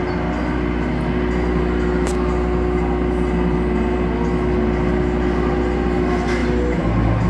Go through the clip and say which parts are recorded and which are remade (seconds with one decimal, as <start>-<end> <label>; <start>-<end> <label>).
0.0-7.3 recorded